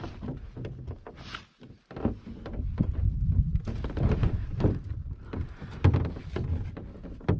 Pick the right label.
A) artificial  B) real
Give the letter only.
B